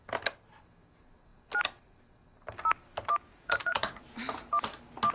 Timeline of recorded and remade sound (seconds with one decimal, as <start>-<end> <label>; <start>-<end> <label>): 0.0-3.3 recorded; 3.3-4.0 remade; 4.0-5.1 recorded